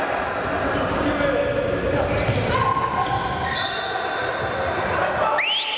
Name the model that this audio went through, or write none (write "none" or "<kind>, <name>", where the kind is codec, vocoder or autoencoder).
none